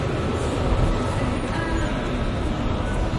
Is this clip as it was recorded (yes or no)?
yes